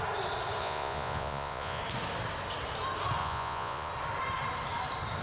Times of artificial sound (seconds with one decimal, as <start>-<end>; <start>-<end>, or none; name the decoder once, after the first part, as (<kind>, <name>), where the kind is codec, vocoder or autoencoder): 0.6-1.8 (vocoder, Vocos); 3.2-3.9